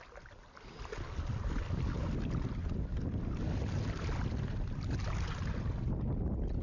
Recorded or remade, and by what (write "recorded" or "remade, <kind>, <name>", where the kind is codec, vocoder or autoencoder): recorded